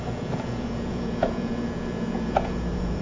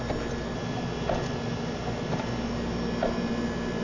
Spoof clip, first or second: first